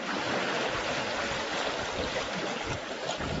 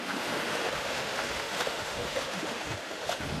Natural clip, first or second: first